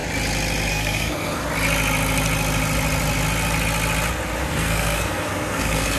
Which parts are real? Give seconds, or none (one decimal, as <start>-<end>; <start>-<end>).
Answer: 0.0-0.7; 1.4-4.4